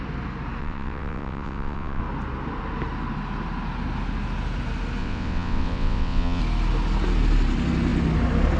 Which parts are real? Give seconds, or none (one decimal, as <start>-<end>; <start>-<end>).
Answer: 0.0-0.6; 2.0-5.0; 6.4-8.6